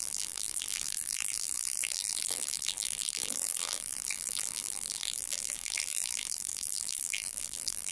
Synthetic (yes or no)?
yes